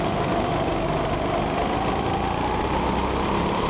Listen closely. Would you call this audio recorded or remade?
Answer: recorded